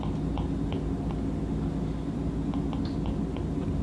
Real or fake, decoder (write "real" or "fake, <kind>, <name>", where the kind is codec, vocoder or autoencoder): real